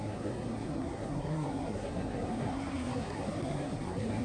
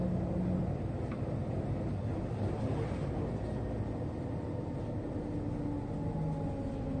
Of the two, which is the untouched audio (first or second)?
second